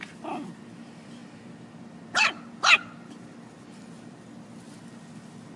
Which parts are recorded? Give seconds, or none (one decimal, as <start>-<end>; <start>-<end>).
0.0-5.6